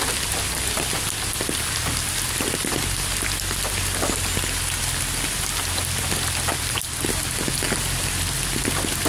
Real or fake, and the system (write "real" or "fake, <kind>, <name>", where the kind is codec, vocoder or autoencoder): real